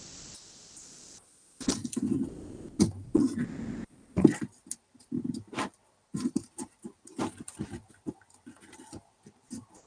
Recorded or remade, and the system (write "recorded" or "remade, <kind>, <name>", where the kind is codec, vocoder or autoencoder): recorded